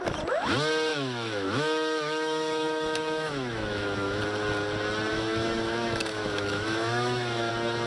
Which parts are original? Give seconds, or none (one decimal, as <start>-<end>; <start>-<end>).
0.0-0.9; 4.2-5.1; 7.5-7.9